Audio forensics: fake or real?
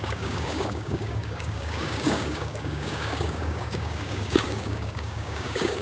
fake